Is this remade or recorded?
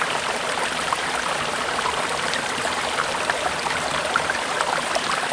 remade